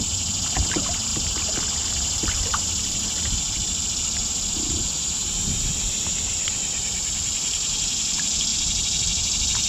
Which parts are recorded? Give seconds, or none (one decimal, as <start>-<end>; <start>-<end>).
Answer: 0.0-9.7